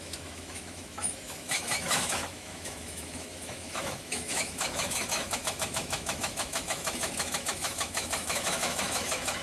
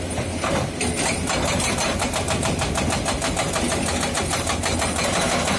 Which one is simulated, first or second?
first